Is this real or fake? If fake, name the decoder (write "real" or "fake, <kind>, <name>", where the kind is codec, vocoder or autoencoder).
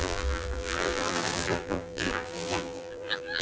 fake, vocoder, BigVGAN v2